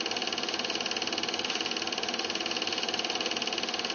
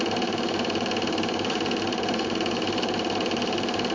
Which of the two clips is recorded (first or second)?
first